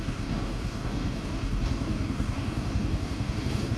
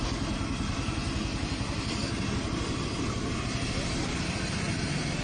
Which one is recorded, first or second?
second